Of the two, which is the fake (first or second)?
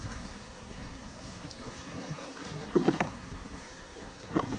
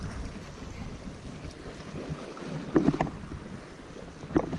first